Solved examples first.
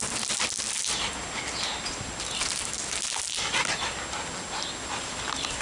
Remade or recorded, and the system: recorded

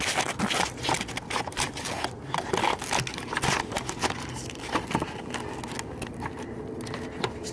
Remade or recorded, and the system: recorded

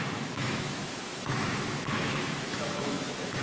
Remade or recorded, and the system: remade, autoencoder, DAC-VAE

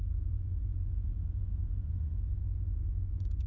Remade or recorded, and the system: remade, vocoder, Vocos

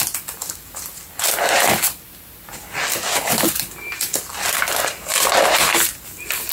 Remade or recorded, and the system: recorded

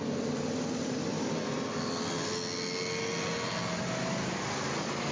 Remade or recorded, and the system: recorded